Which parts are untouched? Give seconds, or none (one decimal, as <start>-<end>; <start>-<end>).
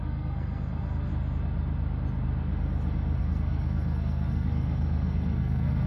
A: 1.1-3.2